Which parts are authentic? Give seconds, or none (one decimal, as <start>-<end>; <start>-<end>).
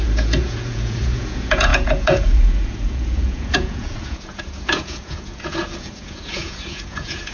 none